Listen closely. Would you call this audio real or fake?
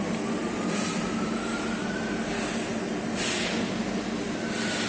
real